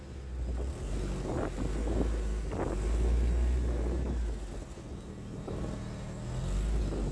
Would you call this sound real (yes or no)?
yes